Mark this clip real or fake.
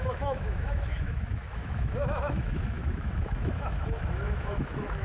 fake